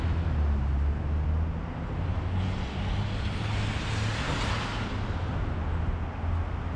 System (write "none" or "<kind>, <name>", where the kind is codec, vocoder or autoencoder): none